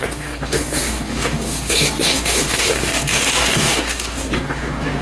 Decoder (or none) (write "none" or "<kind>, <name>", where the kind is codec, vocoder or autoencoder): codec, DAC